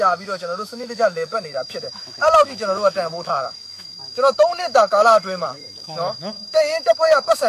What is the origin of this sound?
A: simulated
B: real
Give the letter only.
A